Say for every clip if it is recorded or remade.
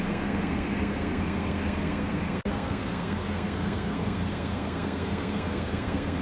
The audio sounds remade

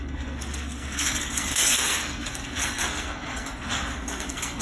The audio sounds remade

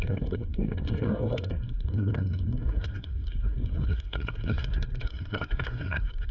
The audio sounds remade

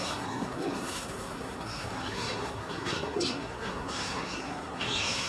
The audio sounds remade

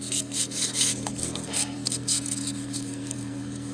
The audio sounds remade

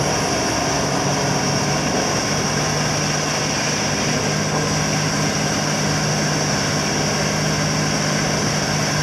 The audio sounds recorded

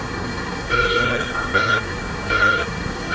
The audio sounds remade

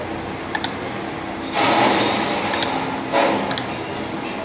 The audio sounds recorded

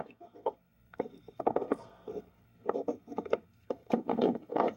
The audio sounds remade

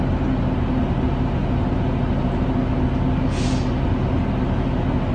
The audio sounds recorded